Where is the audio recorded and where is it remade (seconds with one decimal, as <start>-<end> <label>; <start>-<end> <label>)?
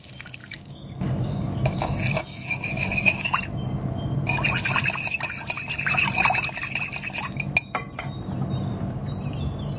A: 0.0-0.4 recorded; 0.4-3.4 remade; 3.4-9.8 recorded